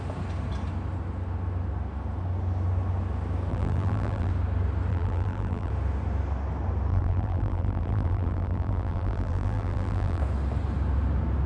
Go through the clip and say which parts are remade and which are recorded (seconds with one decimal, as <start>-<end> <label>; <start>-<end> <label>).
0.0-3.5 recorded; 3.5-4.3 remade; 4.3-4.9 recorded; 4.9-5.7 remade; 5.7-6.9 recorded; 6.9-10.2 remade; 10.2-11.5 recorded